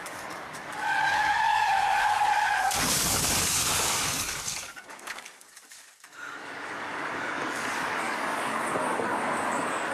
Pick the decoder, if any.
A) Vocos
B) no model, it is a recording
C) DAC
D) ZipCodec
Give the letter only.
C